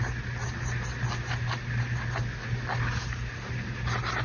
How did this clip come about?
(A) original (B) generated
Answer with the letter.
A